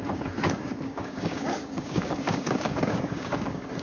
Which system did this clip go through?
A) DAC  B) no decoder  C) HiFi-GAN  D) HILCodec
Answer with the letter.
A